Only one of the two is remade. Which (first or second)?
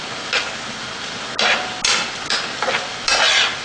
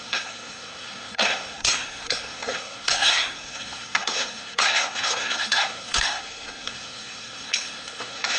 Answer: second